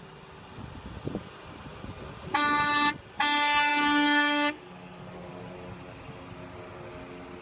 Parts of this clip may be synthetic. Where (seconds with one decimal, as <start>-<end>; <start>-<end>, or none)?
3.7-5.3